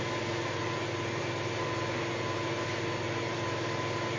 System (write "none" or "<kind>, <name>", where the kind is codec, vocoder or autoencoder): none